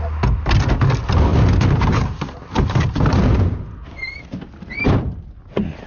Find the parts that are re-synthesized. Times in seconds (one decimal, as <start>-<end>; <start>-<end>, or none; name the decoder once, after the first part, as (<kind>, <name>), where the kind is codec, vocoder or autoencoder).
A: none